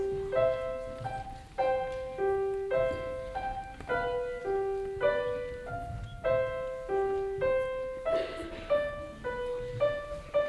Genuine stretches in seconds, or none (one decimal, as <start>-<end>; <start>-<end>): 0.0-10.5